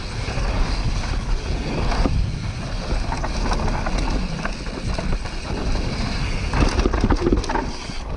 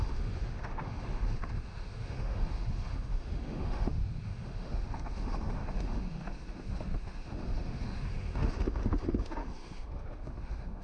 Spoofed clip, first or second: second